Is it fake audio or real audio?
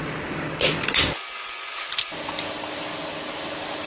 real